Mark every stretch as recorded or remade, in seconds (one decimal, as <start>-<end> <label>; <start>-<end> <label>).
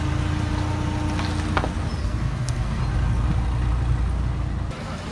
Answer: 0.0-2.0 recorded; 2.0-2.8 remade; 2.8-5.1 recorded